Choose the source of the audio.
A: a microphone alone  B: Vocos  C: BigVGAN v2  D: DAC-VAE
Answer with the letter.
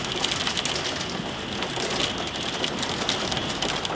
A